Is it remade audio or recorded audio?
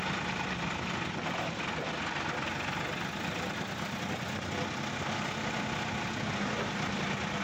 recorded